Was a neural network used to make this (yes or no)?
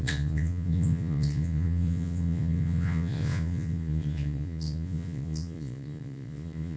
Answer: yes